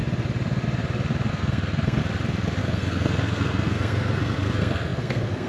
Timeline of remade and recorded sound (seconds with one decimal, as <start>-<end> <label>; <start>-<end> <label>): 0.0-1.3 recorded; 1.3-2.0 remade; 2.0-2.6 recorded; 2.6-5.5 remade